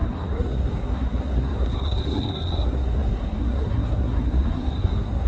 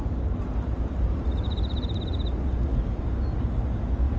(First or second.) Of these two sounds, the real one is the second